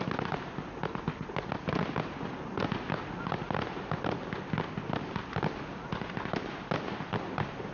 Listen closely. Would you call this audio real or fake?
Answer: real